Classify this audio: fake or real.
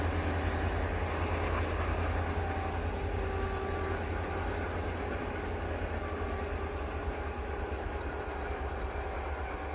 real